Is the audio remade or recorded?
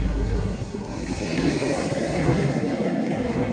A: remade